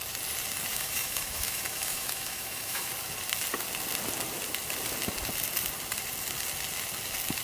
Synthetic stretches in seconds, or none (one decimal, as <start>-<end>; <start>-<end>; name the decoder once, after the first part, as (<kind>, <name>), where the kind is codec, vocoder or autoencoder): 0.7-2.9 (autoencoder, DAC-VAE)

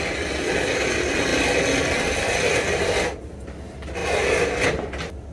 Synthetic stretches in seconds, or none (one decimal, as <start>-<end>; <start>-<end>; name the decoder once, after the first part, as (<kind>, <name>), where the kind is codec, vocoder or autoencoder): none

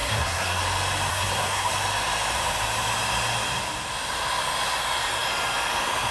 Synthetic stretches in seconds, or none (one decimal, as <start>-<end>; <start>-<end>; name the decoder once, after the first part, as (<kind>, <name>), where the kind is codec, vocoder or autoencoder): 0.0-0.6 (codec, SNAC); 1.1-1.7

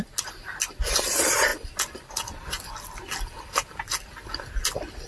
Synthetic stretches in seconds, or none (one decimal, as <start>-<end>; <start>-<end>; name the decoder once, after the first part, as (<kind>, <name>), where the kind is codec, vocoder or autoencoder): none

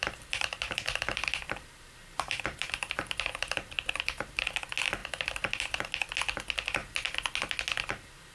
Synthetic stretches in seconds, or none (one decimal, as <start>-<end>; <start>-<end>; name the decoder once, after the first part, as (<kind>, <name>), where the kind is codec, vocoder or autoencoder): 0.0-4.5 (vocoder, BigVGAN v2); 5.0-5.9

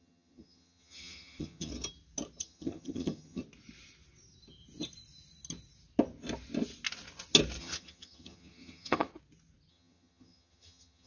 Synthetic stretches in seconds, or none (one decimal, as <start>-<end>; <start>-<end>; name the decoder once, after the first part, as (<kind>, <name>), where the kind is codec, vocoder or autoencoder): 0.0-1.7 (vocoder, HiFi-GAN); 2.4-3.4; 7.6-9.1; 9.7-11.1

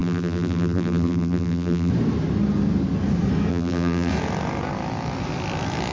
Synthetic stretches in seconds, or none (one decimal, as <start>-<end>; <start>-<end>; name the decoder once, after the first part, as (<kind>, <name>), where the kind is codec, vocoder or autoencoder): 0.0-1.9 (vocoder, BigVGAN v2); 3.5-4.1